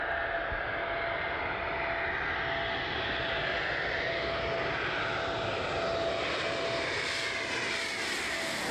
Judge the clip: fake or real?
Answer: real